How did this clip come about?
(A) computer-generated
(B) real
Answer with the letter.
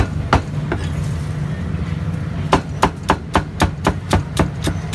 B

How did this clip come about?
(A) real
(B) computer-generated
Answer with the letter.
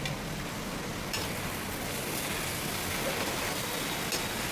A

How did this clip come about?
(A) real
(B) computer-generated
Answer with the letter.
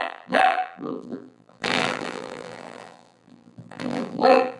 B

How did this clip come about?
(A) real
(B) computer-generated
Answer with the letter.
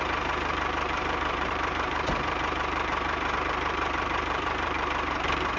B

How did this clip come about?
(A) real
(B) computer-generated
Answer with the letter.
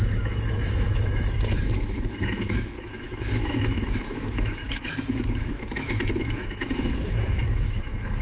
B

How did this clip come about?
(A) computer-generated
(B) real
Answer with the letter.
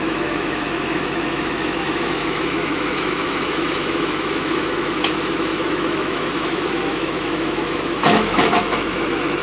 A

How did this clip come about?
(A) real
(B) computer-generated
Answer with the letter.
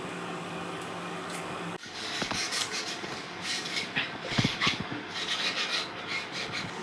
B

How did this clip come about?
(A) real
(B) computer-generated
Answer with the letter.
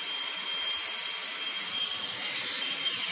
A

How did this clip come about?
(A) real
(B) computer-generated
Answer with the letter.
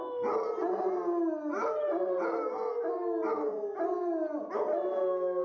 A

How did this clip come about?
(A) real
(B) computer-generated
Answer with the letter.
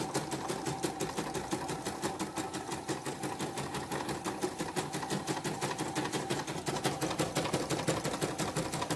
A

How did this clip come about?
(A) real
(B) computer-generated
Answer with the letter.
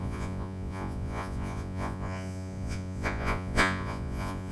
B